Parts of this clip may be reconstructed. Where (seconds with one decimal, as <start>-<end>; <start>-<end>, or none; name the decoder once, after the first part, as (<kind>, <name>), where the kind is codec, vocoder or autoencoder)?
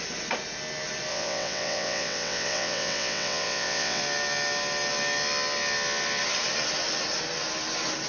1.1-4.0 (vocoder, WaveNeXt)